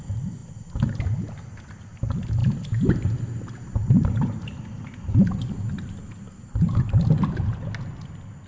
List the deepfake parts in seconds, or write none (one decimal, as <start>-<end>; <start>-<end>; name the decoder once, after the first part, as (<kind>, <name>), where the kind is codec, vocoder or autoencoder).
none